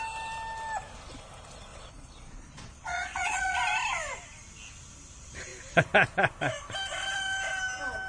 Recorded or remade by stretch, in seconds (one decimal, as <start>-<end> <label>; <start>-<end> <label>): 0.0-1.7 recorded; 1.7-3.6 remade; 3.6-8.1 recorded